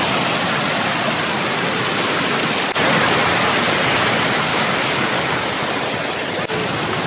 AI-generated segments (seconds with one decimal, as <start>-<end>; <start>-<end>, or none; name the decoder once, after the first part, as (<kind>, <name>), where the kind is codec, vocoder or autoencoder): 4.5-5.2 (codec, DAC)